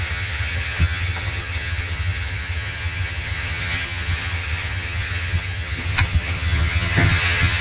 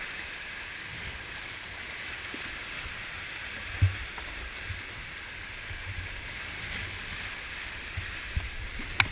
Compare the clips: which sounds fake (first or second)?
first